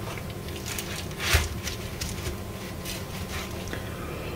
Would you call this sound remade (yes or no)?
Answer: no